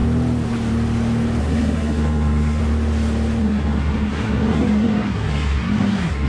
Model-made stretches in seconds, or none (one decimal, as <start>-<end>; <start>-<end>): 1.4-2.6; 3.4-6.3